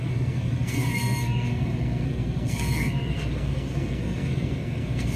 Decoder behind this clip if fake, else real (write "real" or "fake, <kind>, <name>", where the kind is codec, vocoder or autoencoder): fake, codec, SNAC